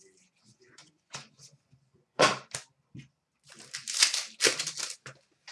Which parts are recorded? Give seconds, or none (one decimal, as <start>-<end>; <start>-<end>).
0.0-0.4; 2.3-5.5